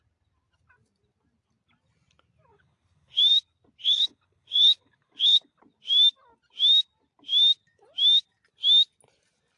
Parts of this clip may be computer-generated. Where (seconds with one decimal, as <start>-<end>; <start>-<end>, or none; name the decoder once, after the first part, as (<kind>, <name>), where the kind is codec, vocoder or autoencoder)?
2.5-3.2 (codec, HILCodec); 3.8-5.6